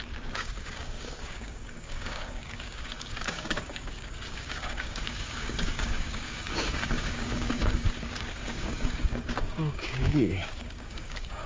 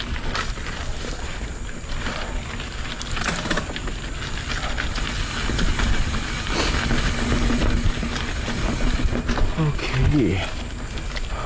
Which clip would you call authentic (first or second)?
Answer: second